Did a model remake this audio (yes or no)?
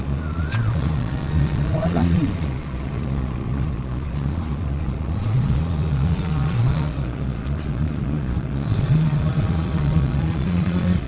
yes